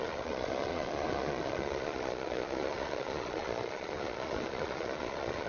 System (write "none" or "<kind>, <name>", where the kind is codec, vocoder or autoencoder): vocoder, Vocos